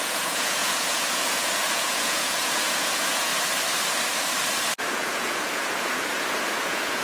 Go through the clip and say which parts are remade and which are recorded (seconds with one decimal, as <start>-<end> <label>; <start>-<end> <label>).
0.0-3.3 remade; 3.3-4.9 recorded; 4.9-7.0 remade